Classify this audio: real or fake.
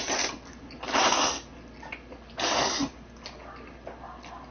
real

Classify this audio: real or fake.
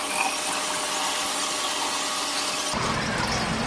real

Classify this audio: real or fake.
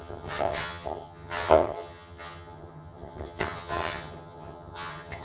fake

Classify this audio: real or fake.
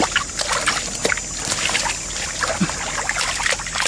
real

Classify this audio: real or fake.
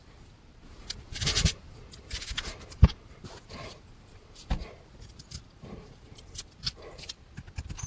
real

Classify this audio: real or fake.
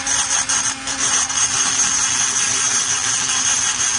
real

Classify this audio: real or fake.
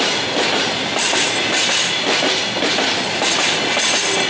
real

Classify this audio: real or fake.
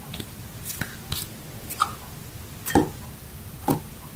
real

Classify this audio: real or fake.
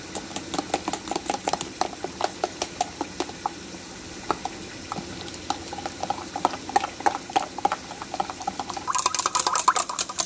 real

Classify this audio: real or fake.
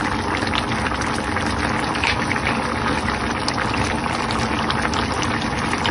real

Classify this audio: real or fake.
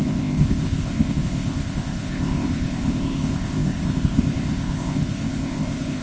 fake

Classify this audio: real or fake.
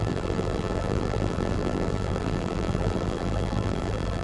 fake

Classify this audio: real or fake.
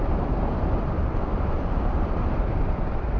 real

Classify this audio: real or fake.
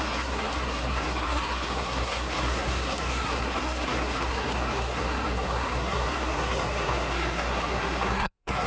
fake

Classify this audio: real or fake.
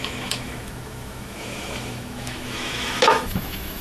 fake